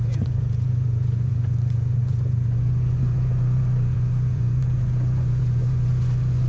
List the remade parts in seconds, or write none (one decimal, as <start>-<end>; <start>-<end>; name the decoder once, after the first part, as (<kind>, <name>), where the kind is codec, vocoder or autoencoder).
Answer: 0.0-6.5 (vocoder, Vocos)